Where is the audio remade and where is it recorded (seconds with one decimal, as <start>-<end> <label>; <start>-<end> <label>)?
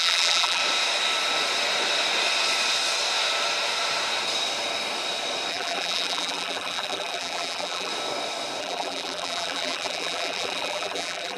0.0-0.6 remade; 0.6-5.5 recorded; 5.5-7.9 remade; 7.9-8.6 recorded; 8.6-11.4 remade